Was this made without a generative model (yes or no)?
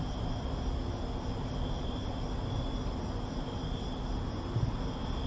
yes